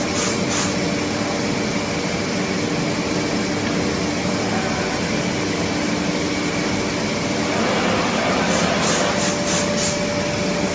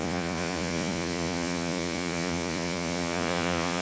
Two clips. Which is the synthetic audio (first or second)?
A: second